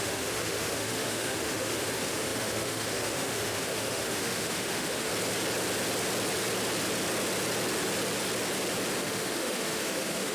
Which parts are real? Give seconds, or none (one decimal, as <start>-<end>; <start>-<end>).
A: 5.1-9.0